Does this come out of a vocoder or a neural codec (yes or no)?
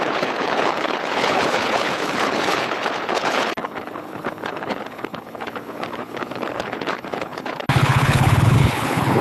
yes